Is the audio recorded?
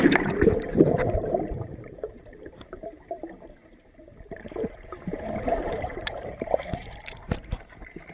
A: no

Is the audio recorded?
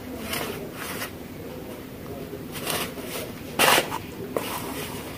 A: no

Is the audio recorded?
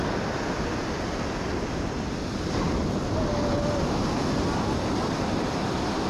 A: yes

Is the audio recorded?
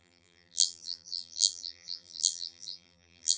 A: no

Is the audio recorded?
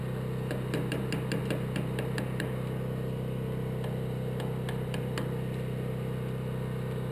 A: yes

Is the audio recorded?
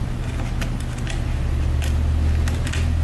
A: yes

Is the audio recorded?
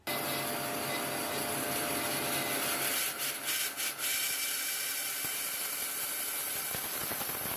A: yes